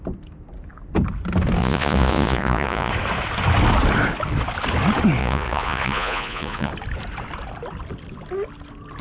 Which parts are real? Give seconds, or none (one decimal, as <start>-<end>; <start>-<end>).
0.0-1.6; 2.9-5.2; 6.7-9.0